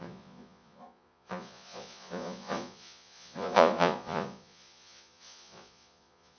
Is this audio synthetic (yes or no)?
yes